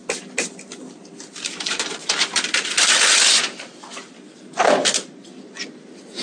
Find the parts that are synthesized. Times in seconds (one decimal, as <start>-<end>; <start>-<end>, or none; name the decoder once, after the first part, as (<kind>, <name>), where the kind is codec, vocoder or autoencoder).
none